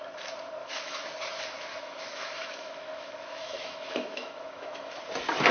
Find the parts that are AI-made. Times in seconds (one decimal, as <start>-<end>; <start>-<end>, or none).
0.6-1.1; 1.7-5.0